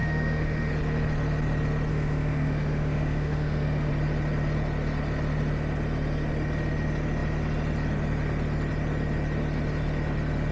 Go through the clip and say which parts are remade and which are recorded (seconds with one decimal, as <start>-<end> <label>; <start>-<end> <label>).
0.0-0.7 remade; 0.7-1.9 recorded; 1.9-3.9 remade; 3.9-10.5 recorded